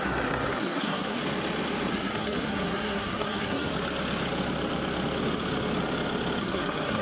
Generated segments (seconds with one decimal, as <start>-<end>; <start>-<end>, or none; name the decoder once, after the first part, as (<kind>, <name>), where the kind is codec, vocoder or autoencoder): 0.0-1.2 (codec, SNAC); 1.9-3.7; 6.4-7.0